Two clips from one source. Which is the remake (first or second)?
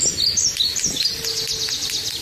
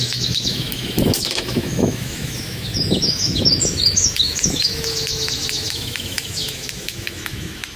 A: second